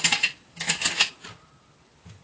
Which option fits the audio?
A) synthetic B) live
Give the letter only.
B